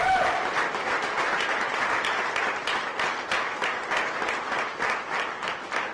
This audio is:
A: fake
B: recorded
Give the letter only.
B